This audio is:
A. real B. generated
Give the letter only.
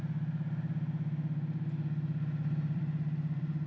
B